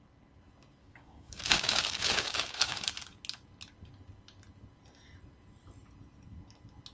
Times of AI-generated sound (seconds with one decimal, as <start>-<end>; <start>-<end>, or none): 0.8-2.9